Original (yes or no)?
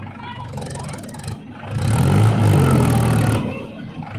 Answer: yes